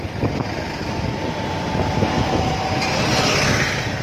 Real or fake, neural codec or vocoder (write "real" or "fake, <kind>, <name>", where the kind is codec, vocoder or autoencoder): real